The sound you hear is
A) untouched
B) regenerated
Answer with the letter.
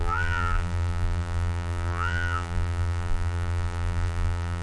B